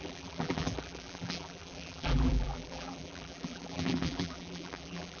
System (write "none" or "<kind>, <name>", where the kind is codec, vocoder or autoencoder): vocoder, BigVGAN v2